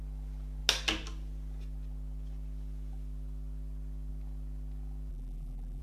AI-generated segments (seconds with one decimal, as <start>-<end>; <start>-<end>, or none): 5.1-5.8